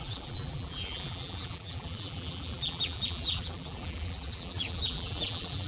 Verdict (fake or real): fake